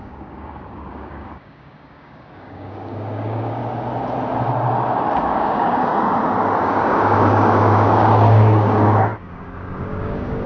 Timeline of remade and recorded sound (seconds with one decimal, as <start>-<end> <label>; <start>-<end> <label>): 0.0-3.6 remade; 3.6-5.2 recorded; 5.2-5.9 remade; 5.9-6.6 recorded; 6.6-10.5 remade